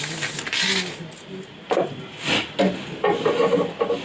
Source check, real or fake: real